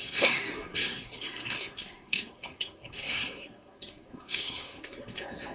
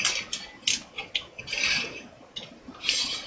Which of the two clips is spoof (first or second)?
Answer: first